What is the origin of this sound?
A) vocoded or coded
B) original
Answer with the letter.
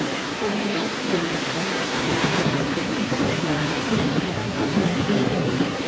A